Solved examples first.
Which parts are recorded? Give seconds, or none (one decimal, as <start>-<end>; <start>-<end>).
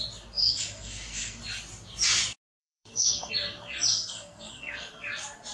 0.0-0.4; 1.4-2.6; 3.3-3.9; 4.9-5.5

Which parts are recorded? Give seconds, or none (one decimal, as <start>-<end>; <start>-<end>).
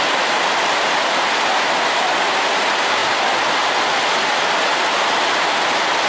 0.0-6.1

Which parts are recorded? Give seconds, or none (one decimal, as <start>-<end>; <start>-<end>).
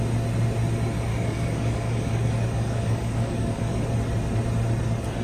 0.0-1.1; 3.8-5.2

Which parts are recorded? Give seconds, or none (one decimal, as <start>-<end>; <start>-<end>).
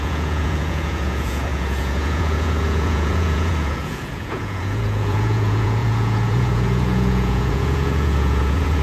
none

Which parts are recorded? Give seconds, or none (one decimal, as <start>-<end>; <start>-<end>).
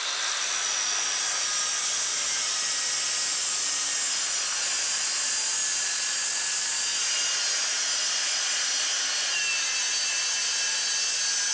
0.0-11.5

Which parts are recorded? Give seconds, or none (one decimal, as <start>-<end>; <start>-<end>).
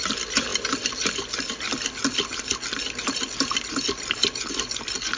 0.0-5.2